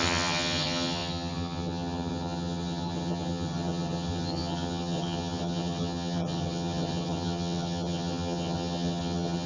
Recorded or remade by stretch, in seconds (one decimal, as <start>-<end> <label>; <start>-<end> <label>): 0.0-9.5 remade

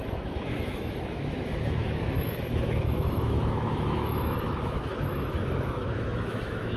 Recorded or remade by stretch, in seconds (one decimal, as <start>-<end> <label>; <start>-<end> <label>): 0.0-6.8 remade

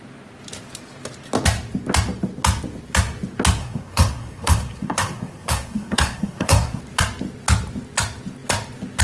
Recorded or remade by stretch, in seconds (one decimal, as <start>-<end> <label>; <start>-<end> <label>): 0.0-3.6 recorded; 3.6-6.8 remade; 6.8-9.0 recorded

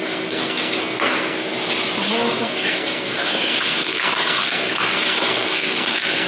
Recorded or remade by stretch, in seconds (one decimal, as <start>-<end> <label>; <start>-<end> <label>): 0.0-1.5 remade; 1.5-2.1 recorded; 2.1-6.3 remade